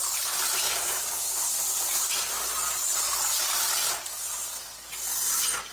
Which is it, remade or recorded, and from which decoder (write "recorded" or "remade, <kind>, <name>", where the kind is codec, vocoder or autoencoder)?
recorded